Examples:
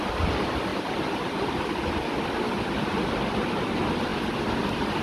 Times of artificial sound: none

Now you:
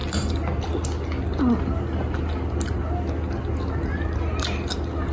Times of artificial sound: none

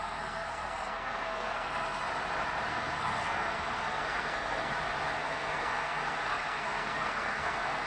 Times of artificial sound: 0.0-2.0 (codec, SNAC); 2.7-4.7; 5.2-7.9

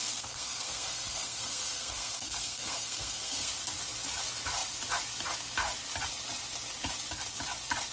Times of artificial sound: 0.0-3.5 (codec, SNAC)